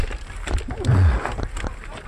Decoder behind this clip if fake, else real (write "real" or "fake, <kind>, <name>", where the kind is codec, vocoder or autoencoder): real